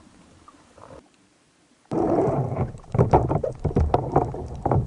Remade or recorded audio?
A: remade